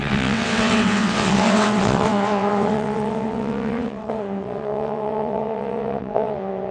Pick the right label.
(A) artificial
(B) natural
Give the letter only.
A